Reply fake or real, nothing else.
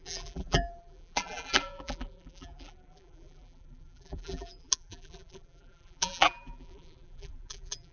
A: fake